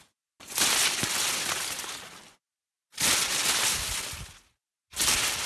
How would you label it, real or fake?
real